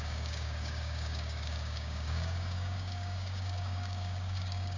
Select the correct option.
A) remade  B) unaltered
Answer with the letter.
A